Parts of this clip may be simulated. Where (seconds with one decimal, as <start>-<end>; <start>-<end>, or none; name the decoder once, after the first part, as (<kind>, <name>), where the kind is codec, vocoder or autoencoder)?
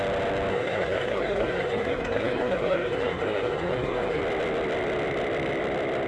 0.5-4.2 (codec, SNAC)